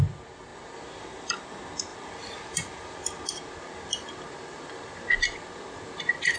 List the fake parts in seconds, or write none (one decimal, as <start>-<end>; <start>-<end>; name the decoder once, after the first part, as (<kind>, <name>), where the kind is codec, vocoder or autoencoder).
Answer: none